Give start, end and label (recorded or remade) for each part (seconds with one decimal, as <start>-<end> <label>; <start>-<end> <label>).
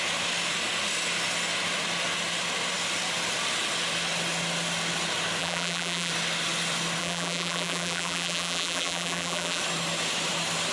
0.0-5.4 recorded; 5.4-6.1 remade; 6.1-7.0 recorded; 7.0-9.6 remade; 9.6-10.7 recorded